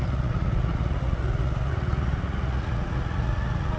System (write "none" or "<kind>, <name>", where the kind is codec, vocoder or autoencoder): vocoder, Vocos